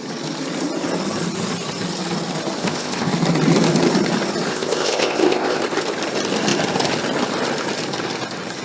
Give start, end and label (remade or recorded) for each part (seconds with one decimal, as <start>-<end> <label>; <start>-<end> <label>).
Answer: 0.0-2.6 recorded; 2.6-3.1 remade; 3.1-4.5 recorded; 4.5-5.6 remade; 5.6-8.6 recorded